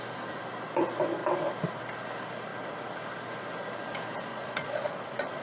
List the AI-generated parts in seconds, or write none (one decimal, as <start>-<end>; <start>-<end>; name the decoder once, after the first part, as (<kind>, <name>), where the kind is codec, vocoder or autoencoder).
4.3-5.4 (vocoder, Vocos)